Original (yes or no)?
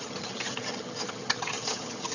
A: no